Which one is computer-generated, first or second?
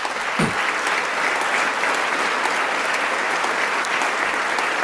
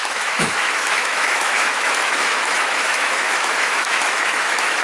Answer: second